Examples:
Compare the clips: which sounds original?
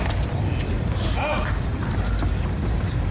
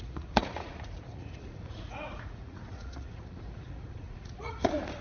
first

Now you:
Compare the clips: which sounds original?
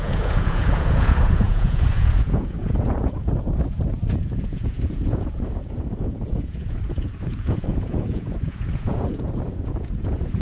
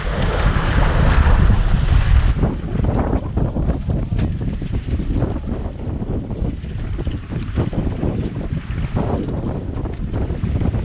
second